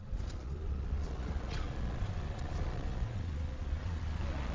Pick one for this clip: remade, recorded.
remade